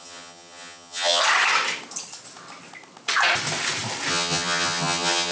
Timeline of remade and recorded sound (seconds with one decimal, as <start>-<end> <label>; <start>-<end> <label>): 0.0-1.2 remade; 1.2-4.1 recorded; 4.1-5.3 remade